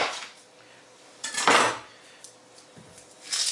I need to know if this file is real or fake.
real